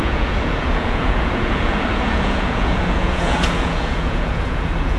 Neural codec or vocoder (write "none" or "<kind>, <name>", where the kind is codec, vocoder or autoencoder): vocoder, Vocos